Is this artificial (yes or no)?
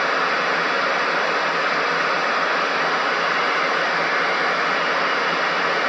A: no